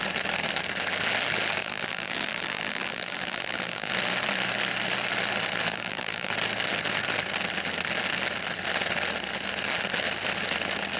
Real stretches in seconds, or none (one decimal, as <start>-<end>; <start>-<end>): 0.0-1.6; 3.9-5.7; 6.3-11.0